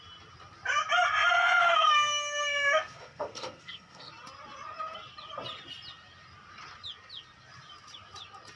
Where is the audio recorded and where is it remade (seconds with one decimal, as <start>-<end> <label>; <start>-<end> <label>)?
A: 0.0-1.6 recorded; 1.6-4.1 remade; 4.1-8.6 recorded